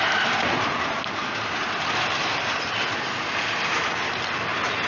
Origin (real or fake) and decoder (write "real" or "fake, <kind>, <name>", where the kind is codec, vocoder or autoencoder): real